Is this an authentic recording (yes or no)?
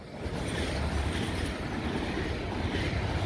yes